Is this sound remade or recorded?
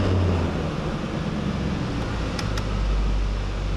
recorded